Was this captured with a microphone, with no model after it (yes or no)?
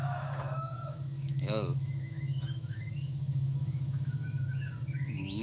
no